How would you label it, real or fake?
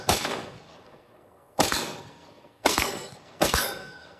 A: fake